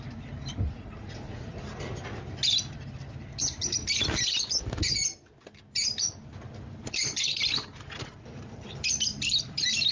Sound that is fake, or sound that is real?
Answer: real